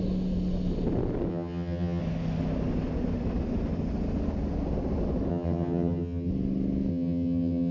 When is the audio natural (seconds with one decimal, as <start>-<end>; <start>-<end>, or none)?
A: 0.0-1.3; 2.0-5.3; 6.3-6.9